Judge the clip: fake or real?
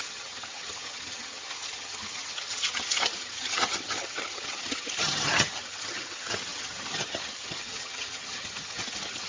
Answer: fake